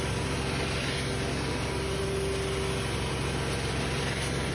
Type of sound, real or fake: real